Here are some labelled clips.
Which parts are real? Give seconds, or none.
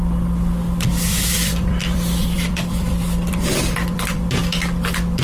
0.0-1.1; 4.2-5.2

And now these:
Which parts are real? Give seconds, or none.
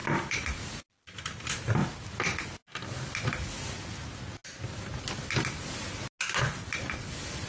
0.0-7.5